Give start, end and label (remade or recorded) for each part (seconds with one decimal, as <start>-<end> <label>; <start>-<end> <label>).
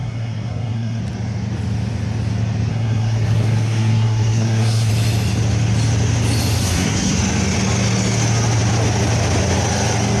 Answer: 0.0-1.0 remade; 1.0-2.7 recorded; 2.7-4.9 remade; 4.9-6.6 recorded; 6.6-7.2 remade; 7.2-10.2 recorded